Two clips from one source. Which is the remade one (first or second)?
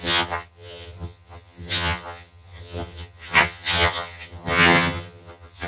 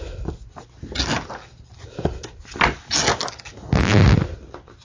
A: first